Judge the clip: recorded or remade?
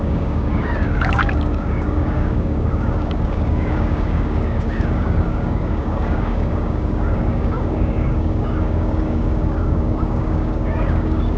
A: remade